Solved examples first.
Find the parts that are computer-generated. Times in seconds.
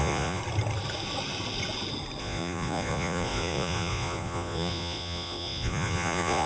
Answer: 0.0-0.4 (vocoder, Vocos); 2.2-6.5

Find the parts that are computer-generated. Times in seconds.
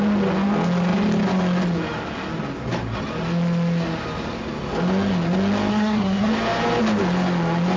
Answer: 5.7-6.3 (codec, SNAC)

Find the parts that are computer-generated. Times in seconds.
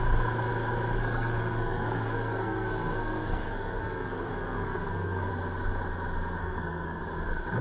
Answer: 1.0-5.3 (codec, SNAC); 6.4-7.0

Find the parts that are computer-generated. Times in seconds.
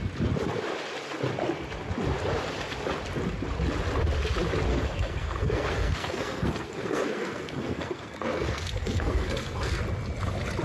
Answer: 4.7-9.8 (codec, SNAC)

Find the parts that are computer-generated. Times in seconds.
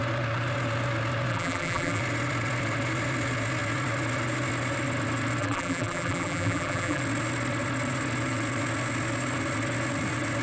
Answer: 1.3-2.0 (vocoder, BigVGAN v2); 5.4-7.0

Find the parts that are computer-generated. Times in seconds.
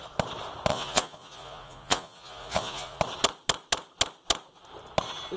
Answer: 0.7-3.0 (vocoder, Vocos)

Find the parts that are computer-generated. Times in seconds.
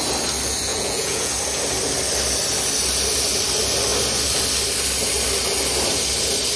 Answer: 0.7-1.3 (vocoder, Vocos)